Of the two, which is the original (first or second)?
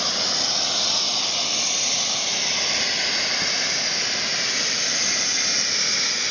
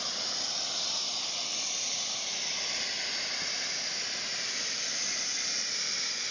first